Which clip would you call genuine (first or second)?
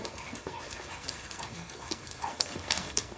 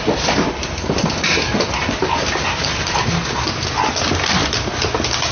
second